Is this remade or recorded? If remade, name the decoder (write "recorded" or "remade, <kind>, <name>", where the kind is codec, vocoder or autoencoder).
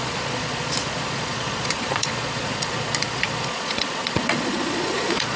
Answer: remade, vocoder, Vocos